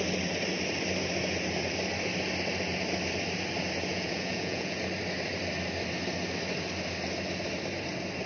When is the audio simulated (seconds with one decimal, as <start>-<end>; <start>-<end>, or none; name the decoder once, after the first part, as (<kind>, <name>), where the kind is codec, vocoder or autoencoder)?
3.9-4.8 (vocoder, Vocos)